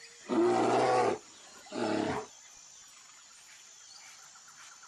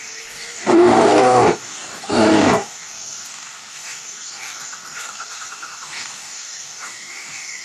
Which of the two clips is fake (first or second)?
second